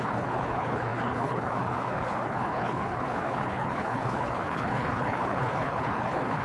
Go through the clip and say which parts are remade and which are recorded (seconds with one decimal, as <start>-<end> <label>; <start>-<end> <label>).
0.0-6.4 remade